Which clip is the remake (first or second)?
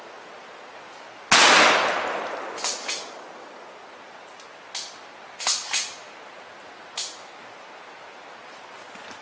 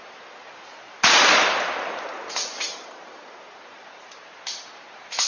second